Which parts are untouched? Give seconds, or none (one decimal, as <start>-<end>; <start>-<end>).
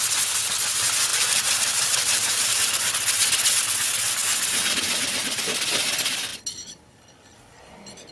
0.0-1.1; 2.9-8.1